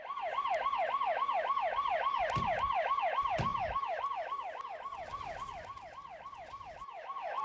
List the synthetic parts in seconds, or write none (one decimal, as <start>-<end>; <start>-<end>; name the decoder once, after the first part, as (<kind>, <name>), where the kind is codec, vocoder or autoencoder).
3.5-7.4 (vocoder, BigVGAN v2)